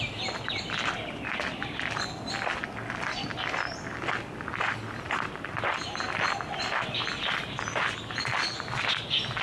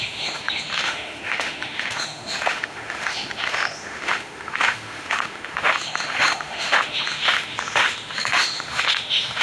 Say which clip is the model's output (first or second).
second